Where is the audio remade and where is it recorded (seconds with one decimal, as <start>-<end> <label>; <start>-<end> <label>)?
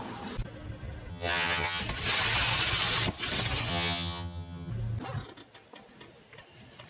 0.0-1.1 recorded; 1.1-1.8 remade; 1.8-3.7 recorded; 3.7-4.7 remade; 4.7-6.9 recorded